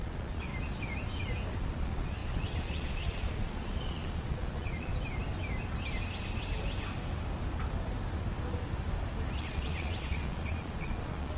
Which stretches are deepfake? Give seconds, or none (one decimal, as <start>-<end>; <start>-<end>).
0.0-0.5; 1.6-4.9; 9.4-11.4